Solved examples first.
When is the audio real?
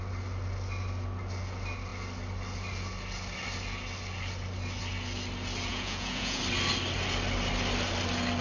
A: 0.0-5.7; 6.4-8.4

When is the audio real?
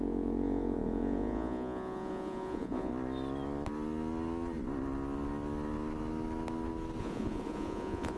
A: 2.9-7.0